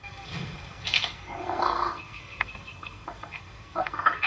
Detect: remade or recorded remade